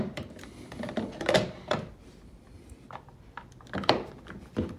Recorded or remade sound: remade